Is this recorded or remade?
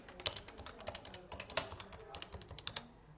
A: recorded